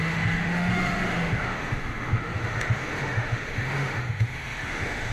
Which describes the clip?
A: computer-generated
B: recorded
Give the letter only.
A